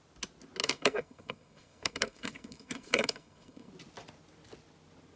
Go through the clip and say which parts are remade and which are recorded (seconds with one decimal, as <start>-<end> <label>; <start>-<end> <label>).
0.0-0.6 recorded; 0.6-3.7 remade; 3.7-5.2 recorded